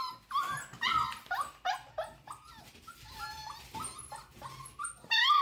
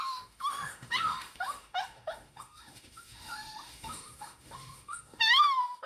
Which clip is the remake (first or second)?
second